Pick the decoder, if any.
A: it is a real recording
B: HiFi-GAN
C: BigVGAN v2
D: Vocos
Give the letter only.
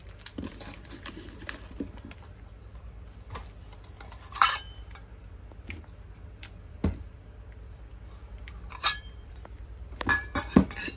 C